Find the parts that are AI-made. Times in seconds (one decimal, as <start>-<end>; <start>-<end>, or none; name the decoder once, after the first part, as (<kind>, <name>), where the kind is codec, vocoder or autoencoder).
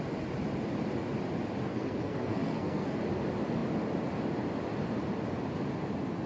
1.7-3.0 (codec, SNAC)